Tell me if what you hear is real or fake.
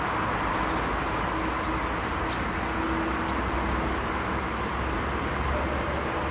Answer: real